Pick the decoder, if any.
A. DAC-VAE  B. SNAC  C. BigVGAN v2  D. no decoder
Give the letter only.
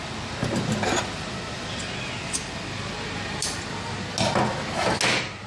D